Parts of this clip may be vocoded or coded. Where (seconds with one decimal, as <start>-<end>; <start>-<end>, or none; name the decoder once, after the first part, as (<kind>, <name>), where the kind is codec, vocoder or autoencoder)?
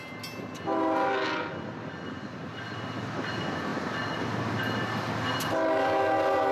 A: none